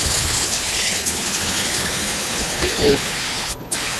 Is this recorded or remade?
remade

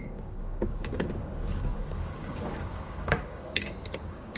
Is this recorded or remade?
remade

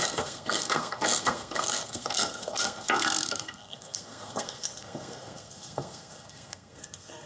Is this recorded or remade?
remade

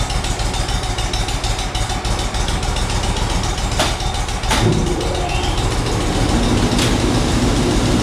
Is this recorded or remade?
recorded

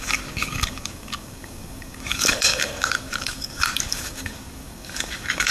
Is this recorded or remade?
remade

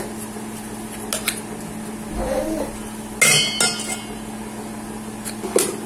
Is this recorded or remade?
recorded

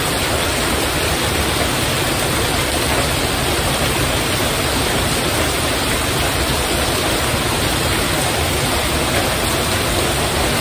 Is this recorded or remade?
remade